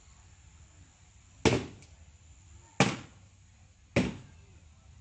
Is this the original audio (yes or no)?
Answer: yes